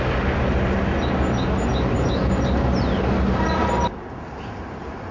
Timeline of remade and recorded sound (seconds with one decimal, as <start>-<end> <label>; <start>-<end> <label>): 0.0-5.1 recorded